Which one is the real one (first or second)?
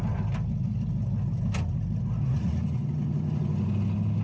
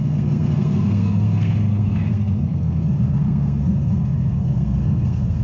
first